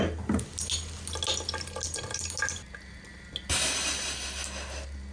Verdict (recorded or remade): recorded